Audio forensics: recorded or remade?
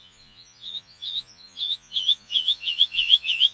remade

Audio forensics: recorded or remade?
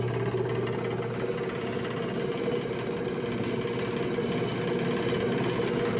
recorded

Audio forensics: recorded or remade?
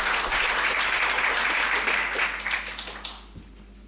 recorded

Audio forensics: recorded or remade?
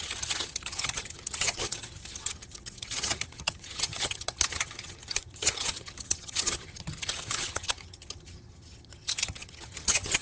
remade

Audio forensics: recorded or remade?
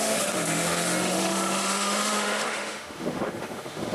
remade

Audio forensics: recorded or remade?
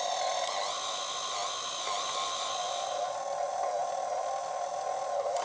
recorded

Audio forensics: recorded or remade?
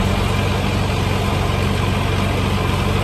recorded